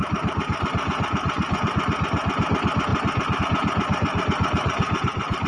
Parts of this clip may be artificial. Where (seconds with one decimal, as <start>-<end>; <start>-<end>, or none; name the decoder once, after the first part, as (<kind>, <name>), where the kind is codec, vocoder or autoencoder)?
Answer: 0.0-5.5 (vocoder, BigVGAN v2)